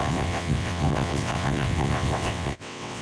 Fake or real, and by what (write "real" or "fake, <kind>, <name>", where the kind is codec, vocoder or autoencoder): fake, vocoder, WaveNeXt